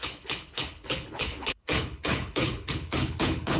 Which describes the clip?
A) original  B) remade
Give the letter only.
B